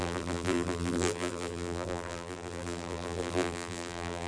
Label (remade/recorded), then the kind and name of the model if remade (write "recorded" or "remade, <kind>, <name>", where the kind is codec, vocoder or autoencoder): remade, vocoder, BigVGAN v2